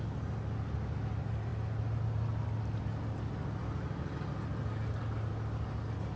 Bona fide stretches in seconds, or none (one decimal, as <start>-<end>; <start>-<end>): 0.0-6.2